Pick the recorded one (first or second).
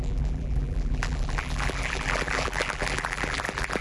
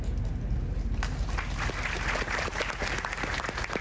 second